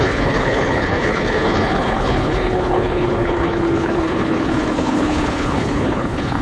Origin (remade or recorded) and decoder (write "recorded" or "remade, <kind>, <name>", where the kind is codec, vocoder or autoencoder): remade, codec, HILCodec